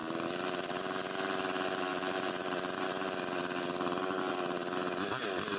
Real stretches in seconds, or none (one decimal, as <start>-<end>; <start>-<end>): 0.7-5.6